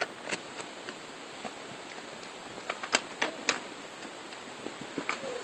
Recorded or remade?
recorded